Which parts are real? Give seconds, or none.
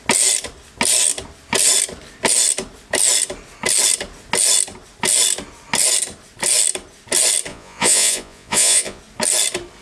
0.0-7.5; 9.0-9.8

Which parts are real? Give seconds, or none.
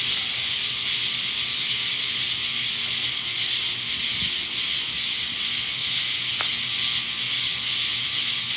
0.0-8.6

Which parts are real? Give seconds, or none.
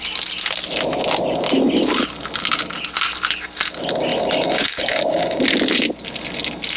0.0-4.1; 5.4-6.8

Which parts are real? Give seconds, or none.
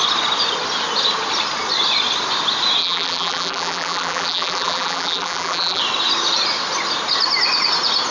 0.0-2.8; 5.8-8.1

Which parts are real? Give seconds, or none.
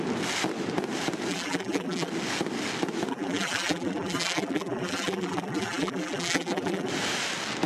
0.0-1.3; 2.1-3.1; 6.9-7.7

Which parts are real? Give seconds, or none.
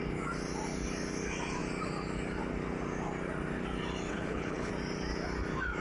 0.0-4.1; 4.7-5.8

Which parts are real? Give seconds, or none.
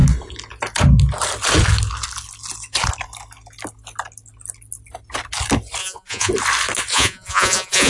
0.0-5.8; 6.3-6.9